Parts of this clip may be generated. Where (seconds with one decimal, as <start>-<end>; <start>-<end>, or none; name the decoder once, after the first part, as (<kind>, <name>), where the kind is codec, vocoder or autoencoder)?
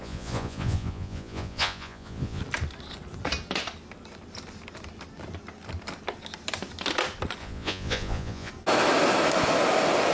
0.0-2.4 (vocoder, Vocos); 7.4-8.5